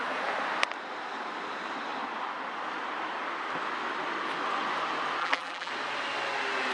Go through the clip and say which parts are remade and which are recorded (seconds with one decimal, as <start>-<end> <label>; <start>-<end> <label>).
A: 0.0-5.2 recorded; 5.2-5.7 remade; 5.7-6.7 recorded